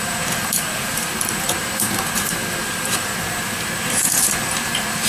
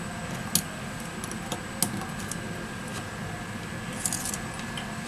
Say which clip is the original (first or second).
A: second